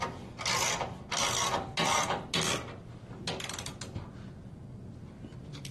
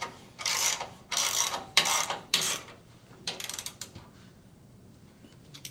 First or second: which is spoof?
second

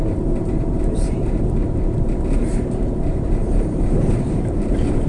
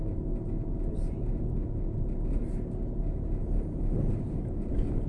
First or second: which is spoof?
first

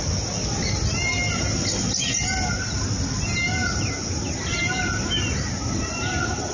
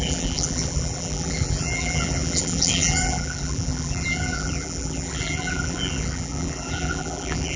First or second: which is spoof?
second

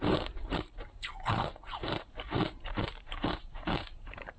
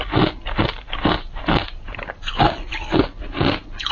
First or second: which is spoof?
first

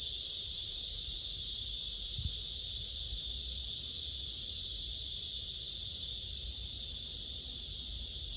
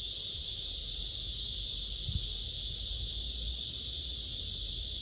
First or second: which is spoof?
first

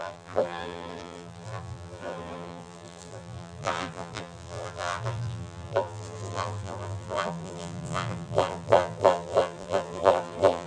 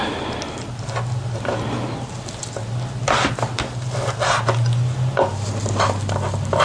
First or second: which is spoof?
first